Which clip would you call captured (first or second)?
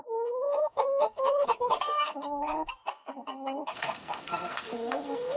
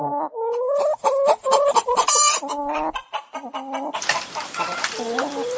second